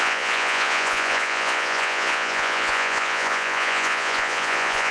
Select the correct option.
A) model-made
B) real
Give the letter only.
A